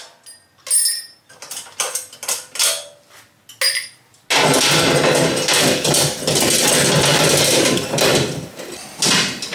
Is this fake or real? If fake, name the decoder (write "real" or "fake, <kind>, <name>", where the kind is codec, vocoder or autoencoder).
real